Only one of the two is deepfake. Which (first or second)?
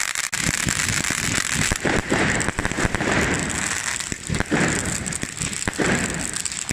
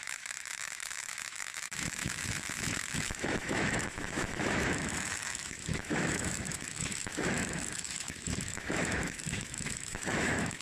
second